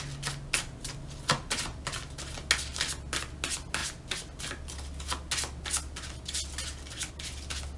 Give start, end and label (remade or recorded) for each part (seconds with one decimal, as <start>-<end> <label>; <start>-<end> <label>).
0.0-7.8 recorded